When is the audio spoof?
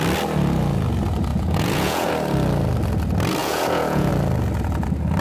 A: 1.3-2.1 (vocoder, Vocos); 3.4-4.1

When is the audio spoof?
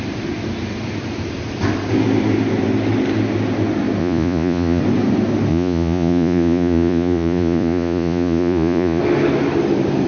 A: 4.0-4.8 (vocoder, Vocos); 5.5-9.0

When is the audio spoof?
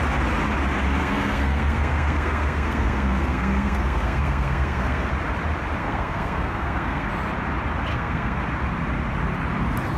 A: 1.0-5.1 (codec, SNAC); 5.8-7.1; 7.9-8.4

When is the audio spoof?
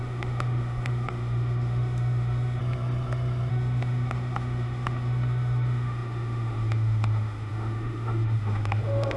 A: 0.0-2.6 (autoencoder, DAC-VAE); 3.5-9.2